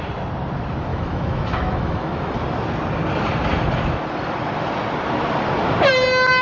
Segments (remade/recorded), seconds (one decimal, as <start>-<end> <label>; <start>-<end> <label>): 0.0-0.9 recorded; 0.9-2.3 remade; 2.3-6.4 recorded